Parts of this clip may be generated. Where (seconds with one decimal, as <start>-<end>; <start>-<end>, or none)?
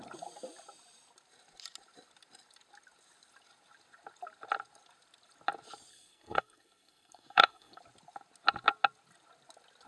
5.9-7.8